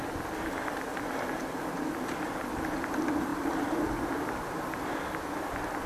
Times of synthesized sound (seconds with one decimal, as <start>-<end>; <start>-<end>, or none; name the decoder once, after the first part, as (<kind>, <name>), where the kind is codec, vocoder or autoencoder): none